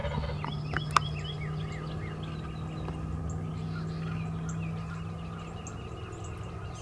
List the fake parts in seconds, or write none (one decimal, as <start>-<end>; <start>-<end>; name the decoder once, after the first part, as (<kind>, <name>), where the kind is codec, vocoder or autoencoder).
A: none